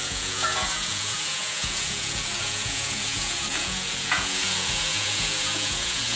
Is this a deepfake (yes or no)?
yes